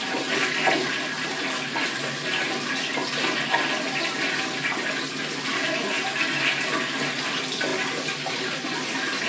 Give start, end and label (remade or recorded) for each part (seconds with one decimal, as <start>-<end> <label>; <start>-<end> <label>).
0.0-9.3 recorded